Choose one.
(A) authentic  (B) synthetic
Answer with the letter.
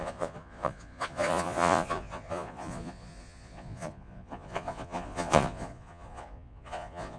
B